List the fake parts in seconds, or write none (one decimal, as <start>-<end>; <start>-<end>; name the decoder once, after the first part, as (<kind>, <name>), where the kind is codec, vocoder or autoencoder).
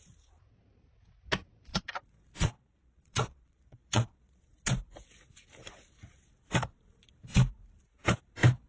1.7-4.4 (vocoder, Vocos)